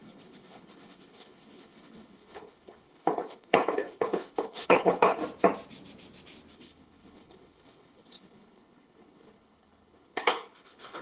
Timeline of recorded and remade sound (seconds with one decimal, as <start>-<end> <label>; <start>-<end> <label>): 0.0-5.2 remade; 5.2-6.5 recorded; 6.5-11.0 remade